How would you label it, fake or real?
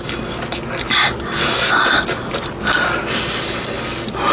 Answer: real